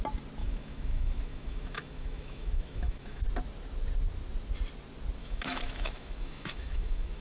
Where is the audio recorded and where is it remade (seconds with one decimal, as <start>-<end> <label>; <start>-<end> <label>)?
0.0-0.4 recorded; 0.4-3.2 remade; 3.2-5.2 recorded; 5.2-7.2 remade